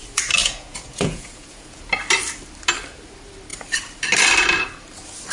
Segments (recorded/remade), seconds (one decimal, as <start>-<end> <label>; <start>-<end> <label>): 0.0-0.4 recorded; 0.4-1.8 remade; 1.8-5.3 recorded